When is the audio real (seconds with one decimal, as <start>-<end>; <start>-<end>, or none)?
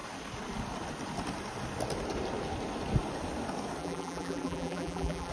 0.0-3.8